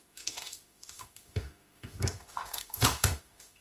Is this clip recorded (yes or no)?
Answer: no